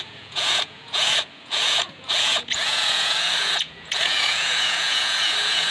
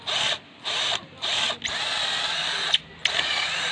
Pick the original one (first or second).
second